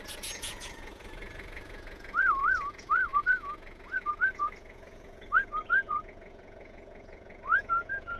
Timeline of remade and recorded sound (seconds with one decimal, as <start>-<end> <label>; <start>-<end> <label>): 0.0-8.2 remade